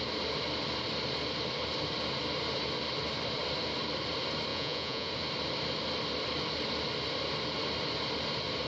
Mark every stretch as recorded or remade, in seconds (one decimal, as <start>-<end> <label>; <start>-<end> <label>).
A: 0.0-4.5 recorded; 4.5-5.1 remade; 5.1-8.7 recorded